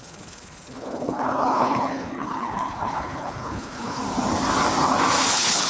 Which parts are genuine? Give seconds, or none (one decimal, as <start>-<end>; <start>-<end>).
4.0-5.3